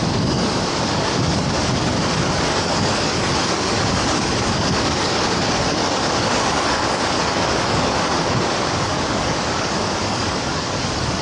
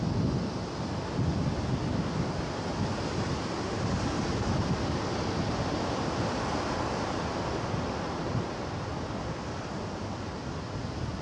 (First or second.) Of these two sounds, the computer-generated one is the first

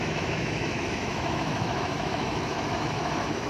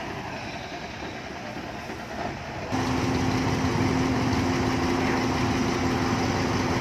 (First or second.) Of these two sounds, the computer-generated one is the first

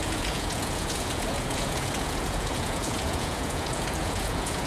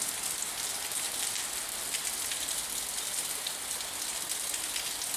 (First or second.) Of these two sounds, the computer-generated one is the first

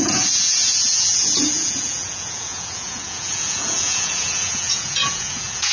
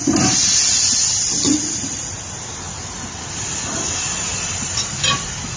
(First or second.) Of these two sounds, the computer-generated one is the first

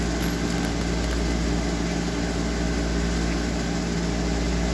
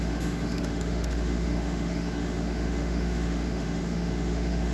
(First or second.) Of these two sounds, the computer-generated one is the second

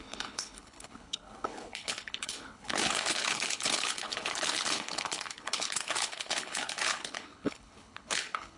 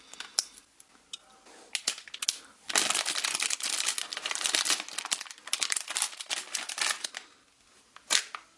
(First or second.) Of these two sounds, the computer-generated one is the first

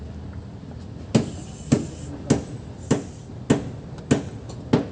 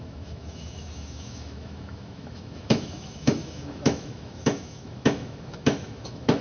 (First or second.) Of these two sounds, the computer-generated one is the second